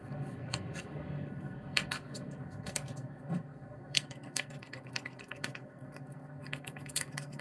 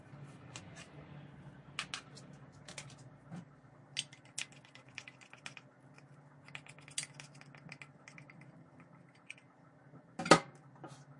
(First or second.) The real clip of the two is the second